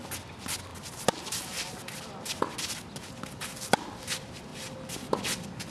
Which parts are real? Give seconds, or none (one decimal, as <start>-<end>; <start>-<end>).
0.0-5.7